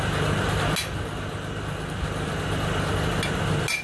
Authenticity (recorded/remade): recorded